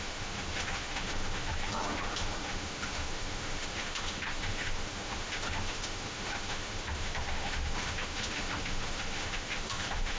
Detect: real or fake fake